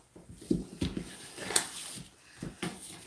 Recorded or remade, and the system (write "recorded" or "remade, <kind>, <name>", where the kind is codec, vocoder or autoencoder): recorded